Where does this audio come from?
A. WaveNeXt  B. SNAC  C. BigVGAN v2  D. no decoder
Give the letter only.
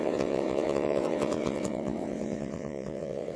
A